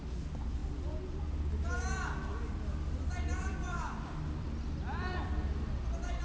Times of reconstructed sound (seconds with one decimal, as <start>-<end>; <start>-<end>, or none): 2.3-5.6